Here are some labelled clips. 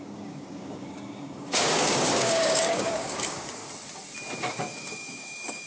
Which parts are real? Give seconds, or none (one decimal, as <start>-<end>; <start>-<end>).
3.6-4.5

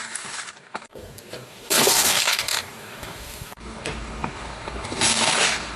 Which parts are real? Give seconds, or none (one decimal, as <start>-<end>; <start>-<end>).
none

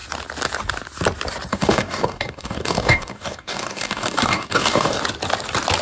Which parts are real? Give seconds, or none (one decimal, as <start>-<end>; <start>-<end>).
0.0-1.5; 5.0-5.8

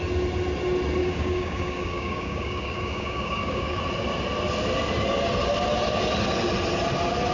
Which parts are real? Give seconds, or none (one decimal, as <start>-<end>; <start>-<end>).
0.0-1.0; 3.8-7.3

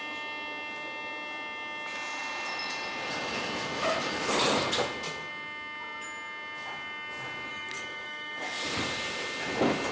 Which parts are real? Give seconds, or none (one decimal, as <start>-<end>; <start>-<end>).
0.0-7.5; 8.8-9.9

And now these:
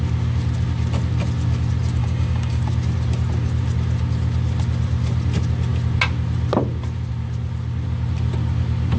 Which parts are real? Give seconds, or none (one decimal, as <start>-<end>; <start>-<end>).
0.0-2.0; 2.6-9.0

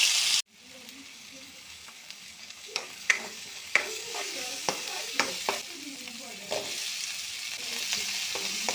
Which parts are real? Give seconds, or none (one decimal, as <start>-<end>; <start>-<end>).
0.0-1.1; 5.3-8.7